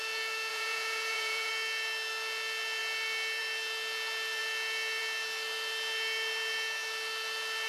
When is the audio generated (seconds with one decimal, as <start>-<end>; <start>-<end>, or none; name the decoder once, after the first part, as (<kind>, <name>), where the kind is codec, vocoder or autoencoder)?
0.5-1.5 (vocoder, Vocos)